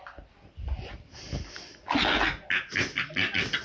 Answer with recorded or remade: recorded